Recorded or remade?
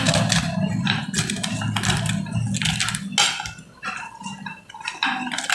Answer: recorded